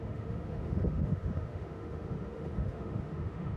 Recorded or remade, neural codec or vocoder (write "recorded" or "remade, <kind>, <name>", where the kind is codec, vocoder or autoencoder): remade, autoencoder, DAC-VAE